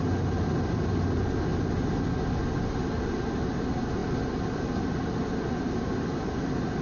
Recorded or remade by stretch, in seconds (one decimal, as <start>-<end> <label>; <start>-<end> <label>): 0.0-6.8 recorded